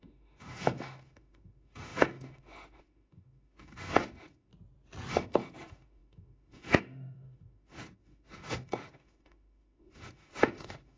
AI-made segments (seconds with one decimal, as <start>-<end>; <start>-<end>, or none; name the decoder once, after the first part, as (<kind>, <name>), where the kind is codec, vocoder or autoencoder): 0.0-4.5 (autoencoder, DAC-VAE); 5.1-11.0